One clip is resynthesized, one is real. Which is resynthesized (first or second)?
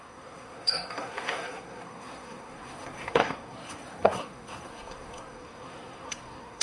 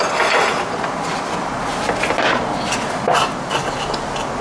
first